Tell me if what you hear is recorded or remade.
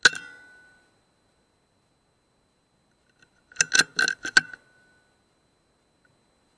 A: recorded